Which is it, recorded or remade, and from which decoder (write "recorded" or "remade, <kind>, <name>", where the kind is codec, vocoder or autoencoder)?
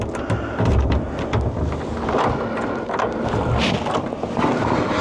recorded